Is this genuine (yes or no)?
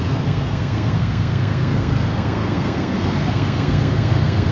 no